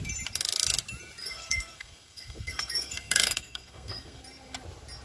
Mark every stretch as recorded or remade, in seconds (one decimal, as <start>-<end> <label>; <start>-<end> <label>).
0.0-1.2 recorded; 1.2-4.2 remade; 4.2-5.0 recorded